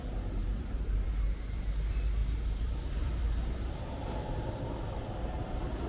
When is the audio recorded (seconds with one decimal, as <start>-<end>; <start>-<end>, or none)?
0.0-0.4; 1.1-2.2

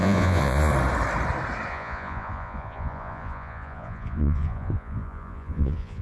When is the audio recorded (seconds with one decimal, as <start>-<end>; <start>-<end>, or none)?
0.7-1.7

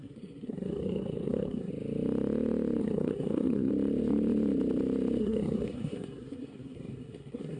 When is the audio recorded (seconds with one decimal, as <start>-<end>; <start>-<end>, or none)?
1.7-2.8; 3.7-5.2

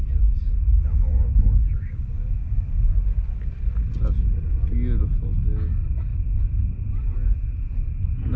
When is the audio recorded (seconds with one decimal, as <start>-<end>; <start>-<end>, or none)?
0.0-5.0